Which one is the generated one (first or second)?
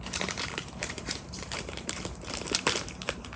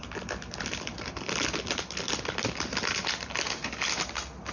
first